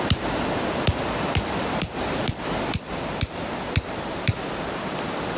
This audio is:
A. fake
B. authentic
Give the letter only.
A